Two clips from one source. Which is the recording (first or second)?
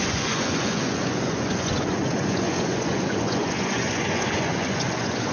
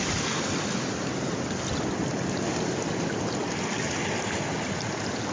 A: second